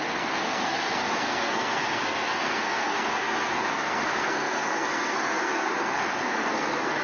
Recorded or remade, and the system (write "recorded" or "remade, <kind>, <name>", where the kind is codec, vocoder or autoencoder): remade, codec, SNAC